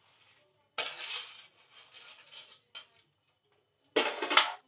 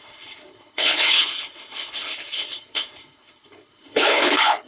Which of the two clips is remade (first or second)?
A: second